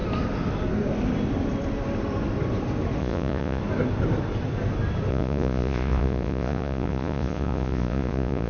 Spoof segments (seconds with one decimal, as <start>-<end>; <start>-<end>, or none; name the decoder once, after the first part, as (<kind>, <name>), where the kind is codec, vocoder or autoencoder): 3.0-3.6 (vocoder, Vocos); 5.1-8.5